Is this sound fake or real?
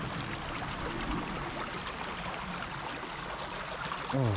real